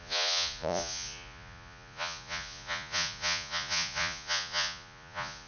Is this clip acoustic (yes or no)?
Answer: no